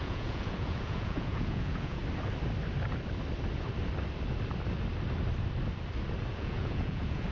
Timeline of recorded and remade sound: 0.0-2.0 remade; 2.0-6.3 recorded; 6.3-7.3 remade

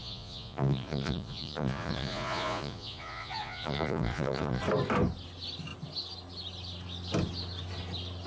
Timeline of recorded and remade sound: 0.0-4.6 remade; 4.6-8.3 recorded

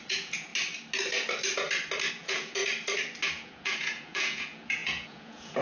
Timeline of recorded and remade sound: 0.0-0.5 remade; 0.5-2.1 recorded; 2.1-2.6 remade; 2.6-3.3 recorded; 3.3-5.6 remade

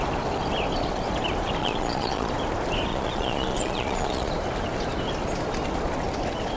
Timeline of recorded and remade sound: 0.0-1.6 recorded; 1.6-2.3 remade; 2.3-2.9 recorded; 2.9-4.3 remade; 4.3-6.6 recorded